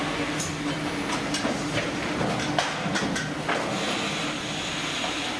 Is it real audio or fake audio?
real